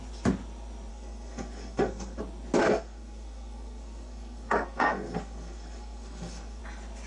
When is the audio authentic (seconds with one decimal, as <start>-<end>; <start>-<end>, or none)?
0.0-0.9; 2.2-2.6; 6.6-7.1